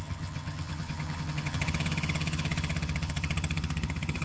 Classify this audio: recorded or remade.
remade